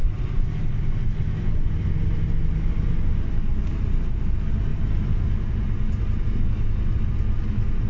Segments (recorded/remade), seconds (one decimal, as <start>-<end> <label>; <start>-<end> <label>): 0.0-0.6 remade; 0.6-3.7 recorded; 3.7-4.3 remade; 4.3-4.7 recorded; 4.7-5.2 remade; 5.2-7.9 recorded

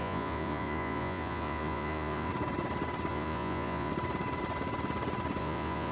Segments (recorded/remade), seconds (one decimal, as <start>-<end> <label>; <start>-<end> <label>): 0.0-2.3 remade; 2.3-3.1 recorded; 3.1-3.9 remade; 3.9-5.4 recorded; 5.4-5.9 remade

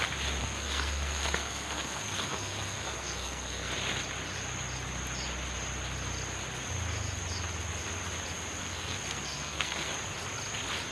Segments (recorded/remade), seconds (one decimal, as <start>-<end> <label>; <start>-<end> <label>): 0.0-0.4 recorded; 0.4-3.7 remade; 3.7-8.6 recorded; 8.6-9.9 remade; 9.9-10.9 recorded

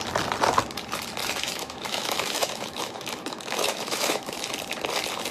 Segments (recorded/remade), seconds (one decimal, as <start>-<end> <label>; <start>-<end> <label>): 0.0-1.2 recorded; 1.2-4.4 remade; 4.4-5.3 recorded

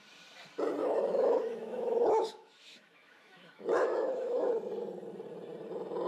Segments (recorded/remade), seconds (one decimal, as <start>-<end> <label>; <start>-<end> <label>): 0.0-0.8 recorded; 0.8-4.5 remade; 4.5-6.1 recorded

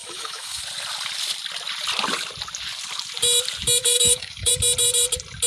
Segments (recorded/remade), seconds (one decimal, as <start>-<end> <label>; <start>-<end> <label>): 0.0-0.6 remade; 0.6-3.8 recorded; 3.8-4.5 remade; 4.5-5.5 recorded

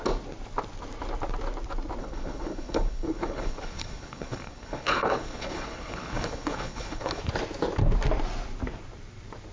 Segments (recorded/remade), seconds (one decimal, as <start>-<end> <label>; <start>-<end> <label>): 0.0-2.0 recorded; 2.0-7.2 remade; 7.2-9.5 recorded